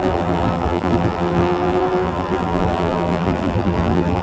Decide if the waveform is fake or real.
fake